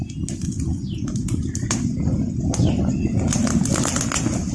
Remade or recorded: recorded